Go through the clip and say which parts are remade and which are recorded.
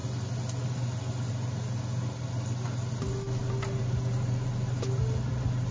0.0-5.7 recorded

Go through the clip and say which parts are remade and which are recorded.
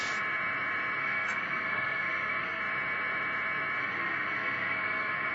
0.0-1.0 recorded; 1.0-2.6 remade; 2.6-3.8 recorded; 3.8-5.3 remade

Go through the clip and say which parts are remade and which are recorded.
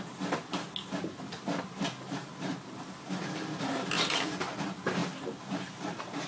0.0-6.3 recorded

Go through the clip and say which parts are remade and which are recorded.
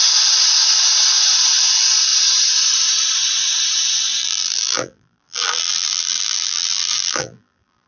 0.0-4.2 recorded; 4.2-7.9 remade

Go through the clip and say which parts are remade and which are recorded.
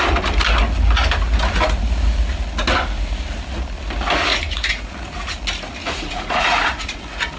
0.0-4.3 recorded; 4.3-4.9 remade; 4.9-5.8 recorded; 5.8-7.0 remade; 7.0-7.4 recorded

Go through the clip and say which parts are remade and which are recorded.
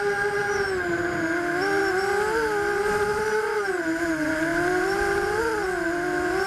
0.0-3.1 recorded; 3.1-4.0 remade; 4.0-4.5 recorded; 4.5-5.4 remade; 5.4-6.5 recorded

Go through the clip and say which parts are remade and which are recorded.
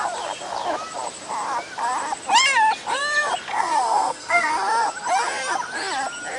0.0-3.5 recorded; 3.5-4.5 remade; 4.5-6.4 recorded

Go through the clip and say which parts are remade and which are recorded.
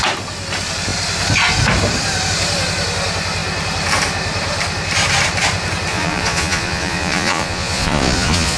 0.0-5.9 recorded; 5.9-8.6 remade